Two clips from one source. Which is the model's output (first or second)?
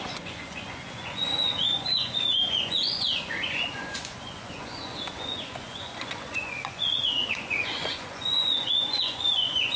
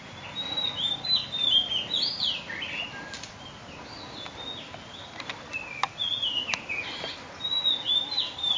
first